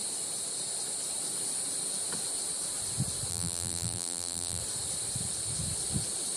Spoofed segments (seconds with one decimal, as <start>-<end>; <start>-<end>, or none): 3.3-4.6